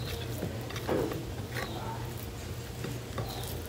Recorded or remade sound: recorded